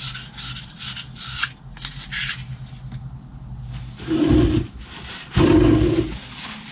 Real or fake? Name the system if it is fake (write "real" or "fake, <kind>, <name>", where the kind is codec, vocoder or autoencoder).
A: real